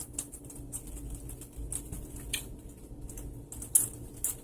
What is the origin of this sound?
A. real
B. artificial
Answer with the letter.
A